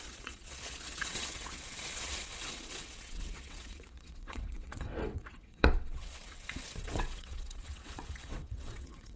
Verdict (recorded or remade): remade